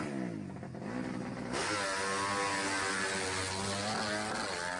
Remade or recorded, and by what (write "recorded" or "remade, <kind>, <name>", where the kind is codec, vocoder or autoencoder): recorded